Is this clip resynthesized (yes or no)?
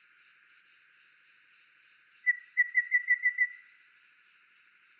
no